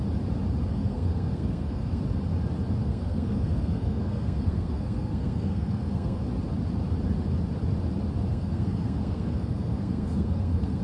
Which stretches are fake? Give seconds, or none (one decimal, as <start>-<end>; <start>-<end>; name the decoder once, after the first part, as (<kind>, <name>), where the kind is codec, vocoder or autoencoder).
0.7-2.0 (codec, SNAC); 2.8-6.2; 8.3-10.8